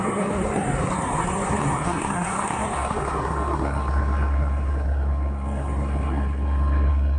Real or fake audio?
fake